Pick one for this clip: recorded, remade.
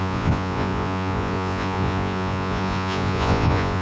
remade